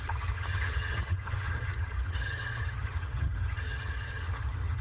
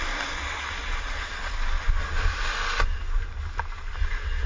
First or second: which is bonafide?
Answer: second